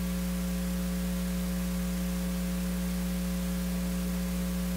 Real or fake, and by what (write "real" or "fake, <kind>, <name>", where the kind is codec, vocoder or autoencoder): real